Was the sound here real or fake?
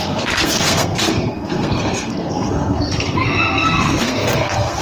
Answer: fake